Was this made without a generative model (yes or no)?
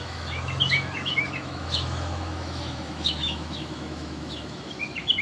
no